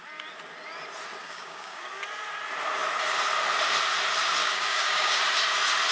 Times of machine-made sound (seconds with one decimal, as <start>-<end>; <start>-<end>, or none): 1.2-1.9; 4.4-5.2